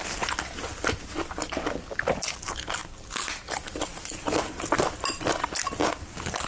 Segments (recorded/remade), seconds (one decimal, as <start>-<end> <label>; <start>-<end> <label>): 0.0-6.5 recorded